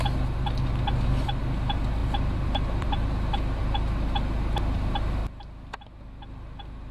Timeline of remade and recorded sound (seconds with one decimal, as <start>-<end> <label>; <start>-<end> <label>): 0.0-2.0 recorded; 2.0-2.9 remade; 2.9-6.9 recorded